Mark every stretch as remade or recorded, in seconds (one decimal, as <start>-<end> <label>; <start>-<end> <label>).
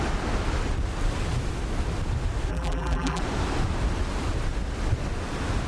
0.0-2.5 recorded; 2.5-3.2 remade; 3.2-5.7 recorded